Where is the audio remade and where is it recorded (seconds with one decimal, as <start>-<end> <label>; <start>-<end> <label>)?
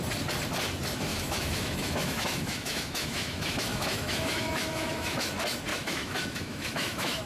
0.0-1.1 recorded; 1.1-5.3 remade; 5.3-5.7 recorded; 5.7-7.3 remade